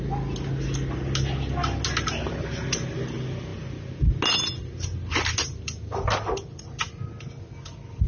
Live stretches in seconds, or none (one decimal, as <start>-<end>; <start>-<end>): 0.0-8.1